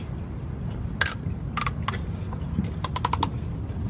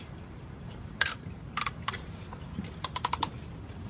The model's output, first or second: second